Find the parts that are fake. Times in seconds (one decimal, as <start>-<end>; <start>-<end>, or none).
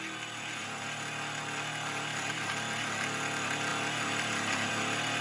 none